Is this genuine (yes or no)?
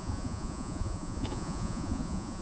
no